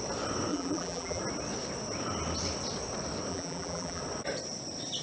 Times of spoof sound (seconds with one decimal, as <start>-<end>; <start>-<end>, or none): 0.5-1.2; 3.3-4.0